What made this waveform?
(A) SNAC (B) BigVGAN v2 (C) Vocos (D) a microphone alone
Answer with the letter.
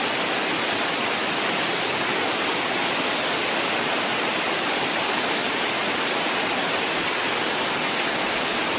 D